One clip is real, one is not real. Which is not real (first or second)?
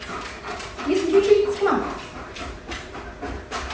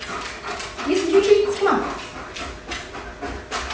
first